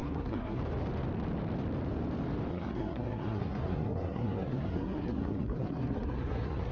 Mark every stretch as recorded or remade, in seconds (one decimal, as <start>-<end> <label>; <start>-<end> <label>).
0.0-0.6 remade; 0.6-2.5 recorded; 2.5-6.7 remade